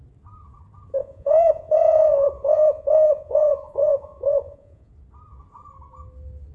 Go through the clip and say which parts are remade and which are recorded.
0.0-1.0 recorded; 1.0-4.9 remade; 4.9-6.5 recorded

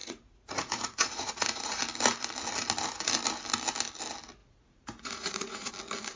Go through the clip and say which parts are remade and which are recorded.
0.0-1.8 remade; 1.8-4.4 recorded; 4.4-5.7 remade; 5.7-6.2 recorded